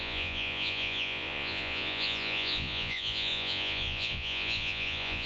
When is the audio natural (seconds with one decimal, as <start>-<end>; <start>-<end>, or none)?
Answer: none